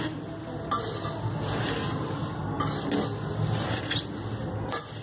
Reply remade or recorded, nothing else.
recorded